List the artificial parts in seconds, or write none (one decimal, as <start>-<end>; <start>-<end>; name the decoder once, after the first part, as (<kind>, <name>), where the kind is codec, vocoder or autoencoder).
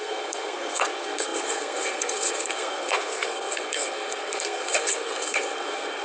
0.0-6.0 (codec, SNAC)